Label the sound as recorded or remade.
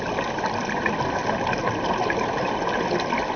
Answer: recorded